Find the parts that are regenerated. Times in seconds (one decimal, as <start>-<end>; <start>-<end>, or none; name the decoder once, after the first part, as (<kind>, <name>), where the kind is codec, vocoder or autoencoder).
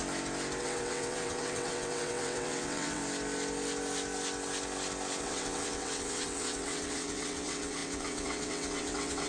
0.6-3.0 (vocoder, WaveNeXt); 5.2-9.3